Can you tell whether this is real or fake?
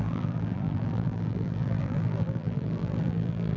fake